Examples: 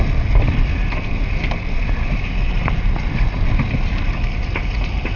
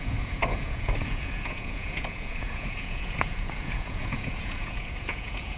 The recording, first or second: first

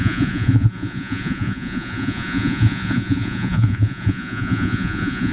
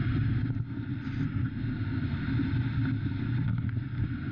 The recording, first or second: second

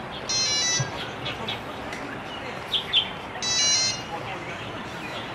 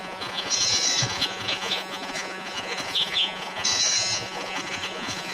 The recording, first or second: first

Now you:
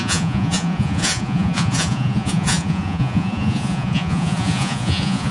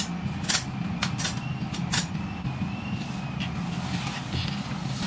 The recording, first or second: second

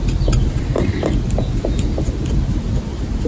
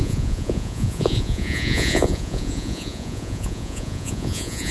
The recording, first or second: first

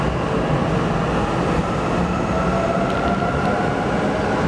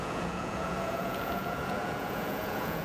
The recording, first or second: first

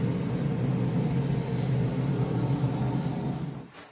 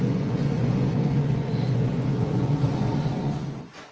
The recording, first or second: first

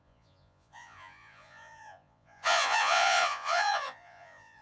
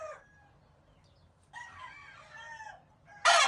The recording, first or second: second